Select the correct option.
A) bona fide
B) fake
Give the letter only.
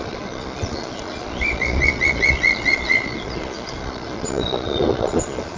B